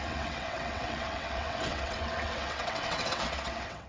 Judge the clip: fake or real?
fake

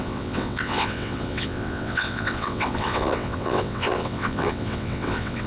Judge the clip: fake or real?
fake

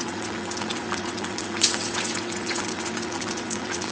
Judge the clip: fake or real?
fake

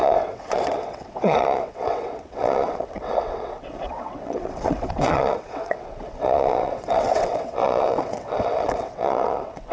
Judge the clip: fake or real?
fake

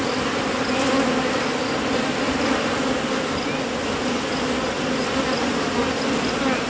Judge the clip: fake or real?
real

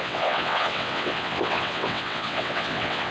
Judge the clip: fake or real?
fake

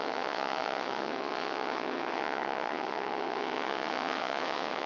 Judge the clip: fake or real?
fake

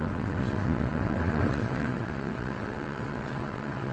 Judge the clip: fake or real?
fake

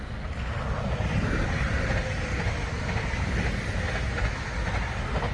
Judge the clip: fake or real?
real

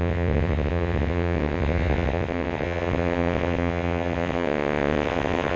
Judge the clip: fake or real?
fake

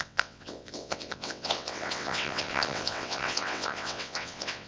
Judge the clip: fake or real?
fake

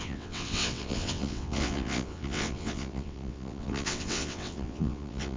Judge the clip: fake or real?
fake